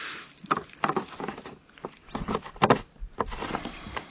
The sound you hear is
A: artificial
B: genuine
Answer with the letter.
B